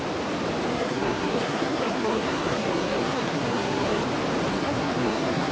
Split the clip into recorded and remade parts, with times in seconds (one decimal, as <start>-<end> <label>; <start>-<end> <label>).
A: 0.0-0.7 recorded; 0.7-4.0 remade; 4.0-4.5 recorded; 4.5-5.5 remade

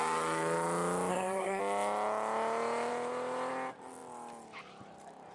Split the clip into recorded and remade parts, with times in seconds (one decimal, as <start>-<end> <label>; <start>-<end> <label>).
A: 0.0-1.1 recorded; 1.1-1.6 remade; 1.6-5.3 recorded

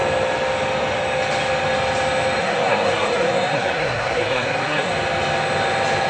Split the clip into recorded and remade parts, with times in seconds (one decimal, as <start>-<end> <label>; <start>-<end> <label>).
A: 0.0-2.4 recorded; 2.4-4.9 remade; 4.9-6.1 recorded

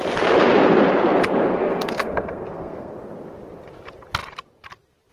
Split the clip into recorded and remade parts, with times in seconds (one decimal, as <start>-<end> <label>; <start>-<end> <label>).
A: 0.0-1.5 recorded; 1.5-2.9 remade; 2.9-5.1 recorded